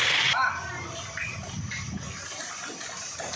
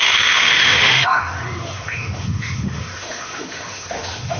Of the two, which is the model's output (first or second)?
second